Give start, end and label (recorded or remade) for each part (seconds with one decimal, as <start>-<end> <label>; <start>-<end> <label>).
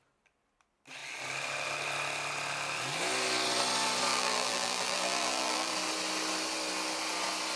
0.0-4.1 recorded; 4.1-5.7 remade; 5.7-7.6 recorded